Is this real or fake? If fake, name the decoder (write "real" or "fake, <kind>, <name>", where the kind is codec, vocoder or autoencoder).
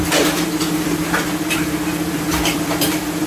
fake, vocoder, BigVGAN v2